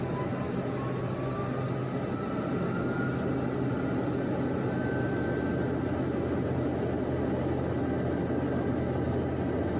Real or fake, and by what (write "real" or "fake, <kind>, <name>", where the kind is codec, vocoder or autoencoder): real